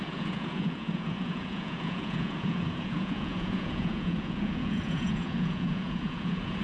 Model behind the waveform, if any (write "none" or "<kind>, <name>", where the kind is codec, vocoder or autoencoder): vocoder, Vocos